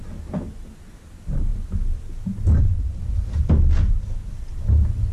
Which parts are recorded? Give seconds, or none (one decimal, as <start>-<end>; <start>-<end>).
0.0-5.1